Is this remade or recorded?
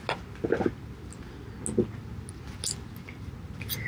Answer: recorded